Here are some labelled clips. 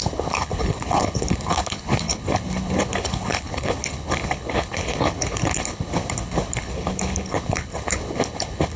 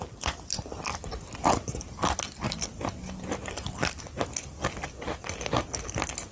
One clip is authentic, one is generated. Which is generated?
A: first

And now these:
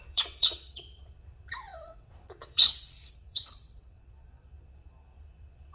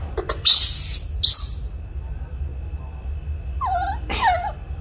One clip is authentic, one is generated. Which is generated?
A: first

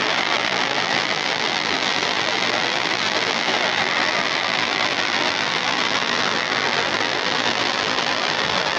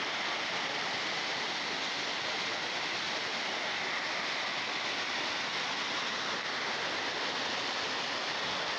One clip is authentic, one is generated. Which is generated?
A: first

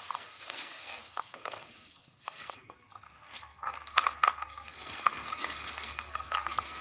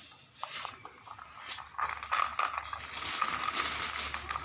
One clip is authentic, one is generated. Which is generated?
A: first